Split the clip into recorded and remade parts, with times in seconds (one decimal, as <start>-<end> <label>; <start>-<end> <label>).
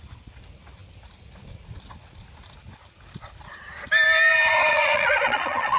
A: 0.0-4.7 recorded; 4.7-5.8 remade